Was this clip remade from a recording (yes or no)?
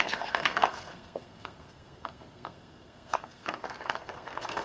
yes